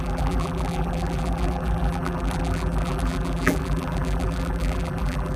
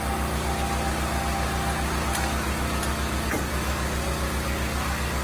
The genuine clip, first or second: second